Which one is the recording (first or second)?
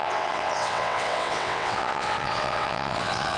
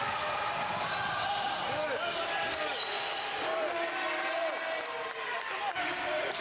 second